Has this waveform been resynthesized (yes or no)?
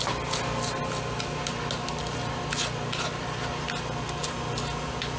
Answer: no